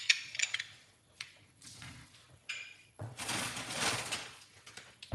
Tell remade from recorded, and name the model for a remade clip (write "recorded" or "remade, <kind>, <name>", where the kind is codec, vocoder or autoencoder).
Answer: remade, vocoder, Vocos